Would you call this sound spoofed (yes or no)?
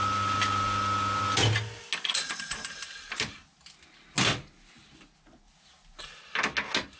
no